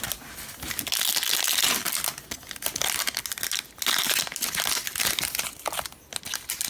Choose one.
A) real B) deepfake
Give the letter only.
A